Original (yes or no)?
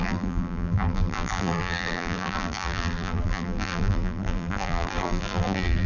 no